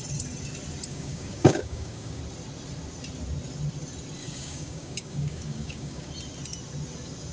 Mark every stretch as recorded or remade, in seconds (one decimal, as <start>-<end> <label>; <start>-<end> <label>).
0.0-0.9 recorded; 0.9-2.2 remade; 2.2-4.2 recorded; 4.2-6.1 remade; 6.1-7.3 recorded